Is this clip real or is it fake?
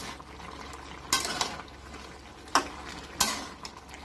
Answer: real